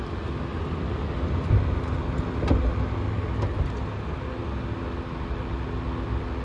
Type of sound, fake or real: real